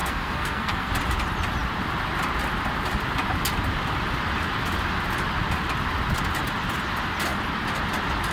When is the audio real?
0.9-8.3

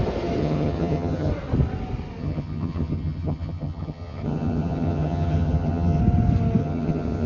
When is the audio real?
0.0-0.4; 1.3-2.2; 6.0-6.6

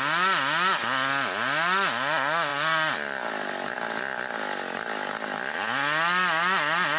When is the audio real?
0.0-7.0

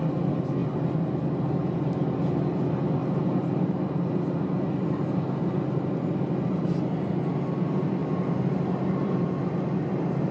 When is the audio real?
0.0-0.6; 2.3-3.0; 4.1-8.0; 9.2-10.3

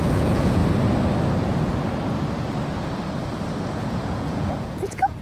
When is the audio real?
0.6-3.7

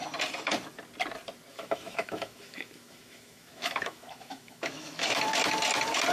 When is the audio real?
0.0-1.5; 5.2-6.1